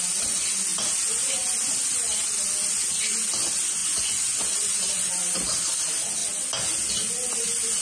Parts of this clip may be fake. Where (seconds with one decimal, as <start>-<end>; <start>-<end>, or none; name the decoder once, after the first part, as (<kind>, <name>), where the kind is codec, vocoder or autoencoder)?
3.8-5.1 (vocoder, Vocos)